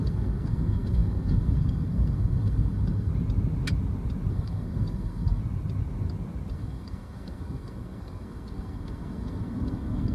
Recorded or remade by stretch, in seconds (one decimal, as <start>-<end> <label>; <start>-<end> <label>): 0.0-3.1 remade; 3.1-4.3 recorded; 4.3-5.4 remade; 5.4-6.5 recorded; 6.5-10.1 remade